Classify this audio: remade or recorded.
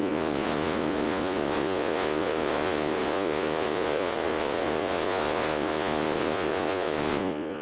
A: remade